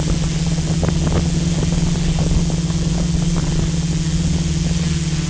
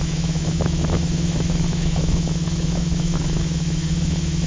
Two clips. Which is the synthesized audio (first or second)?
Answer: second